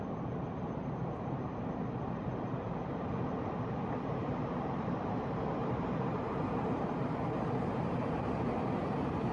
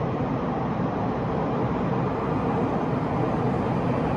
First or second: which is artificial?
first